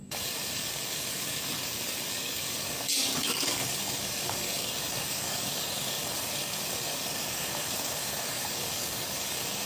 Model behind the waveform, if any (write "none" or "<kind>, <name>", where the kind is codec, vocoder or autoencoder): codec, DAC